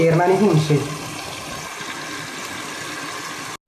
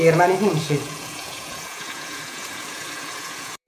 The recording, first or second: first